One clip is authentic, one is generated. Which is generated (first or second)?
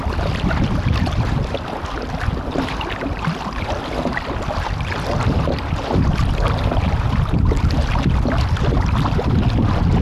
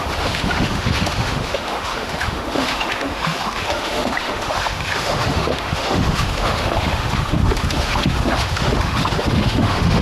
second